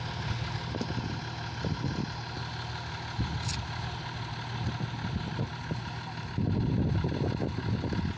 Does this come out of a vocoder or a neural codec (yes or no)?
no